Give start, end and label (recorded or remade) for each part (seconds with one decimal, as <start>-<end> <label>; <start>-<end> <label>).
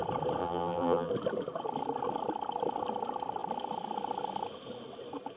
0.0-0.4 recorded; 0.4-1.1 remade; 1.1-5.4 recorded